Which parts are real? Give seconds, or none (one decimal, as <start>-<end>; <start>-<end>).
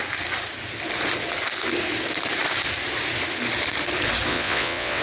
0.0-4.3